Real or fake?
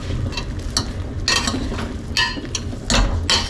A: real